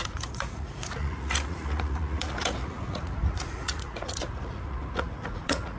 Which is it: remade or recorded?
remade